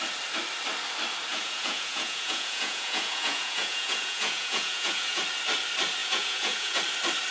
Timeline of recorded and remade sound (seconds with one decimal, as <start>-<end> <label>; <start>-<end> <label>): 0.0-1.3 recorded; 1.3-5.2 remade; 5.2-6.0 recorded; 6.0-6.8 remade; 6.8-7.3 recorded